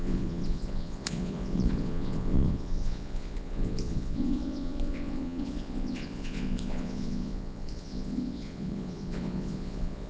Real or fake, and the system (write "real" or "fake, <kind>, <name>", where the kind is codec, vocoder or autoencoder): fake, vocoder, Vocos